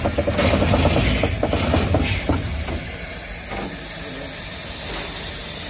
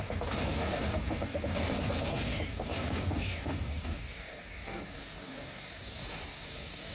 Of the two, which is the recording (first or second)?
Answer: first